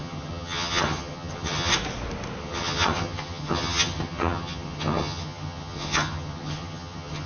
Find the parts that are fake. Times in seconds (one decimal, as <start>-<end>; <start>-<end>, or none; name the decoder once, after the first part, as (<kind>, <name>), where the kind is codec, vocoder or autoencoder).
0.0-1.7 (vocoder, HiFi-GAN); 2.4-7.3